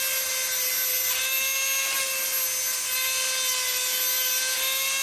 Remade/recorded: recorded